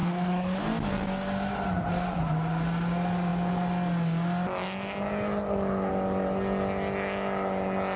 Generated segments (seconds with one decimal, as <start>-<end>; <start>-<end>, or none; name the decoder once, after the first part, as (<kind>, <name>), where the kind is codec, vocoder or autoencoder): 0.0-0.6 (codec, HILCodec)